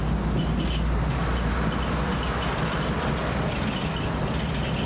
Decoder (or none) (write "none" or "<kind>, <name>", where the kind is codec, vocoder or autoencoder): none